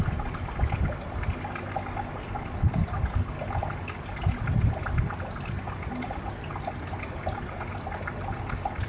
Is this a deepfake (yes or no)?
no